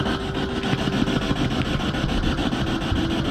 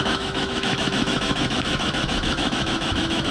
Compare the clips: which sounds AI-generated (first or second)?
second